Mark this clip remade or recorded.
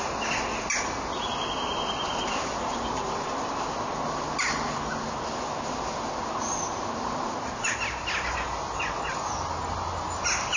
recorded